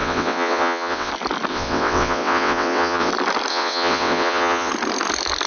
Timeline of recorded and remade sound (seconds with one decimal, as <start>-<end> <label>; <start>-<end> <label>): 0.0-1.1 remade; 1.1-1.5 recorded; 1.5-3.1 remade; 3.1-3.5 recorded; 3.5-4.7 remade; 4.7-5.5 recorded